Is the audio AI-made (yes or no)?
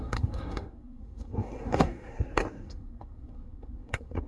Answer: yes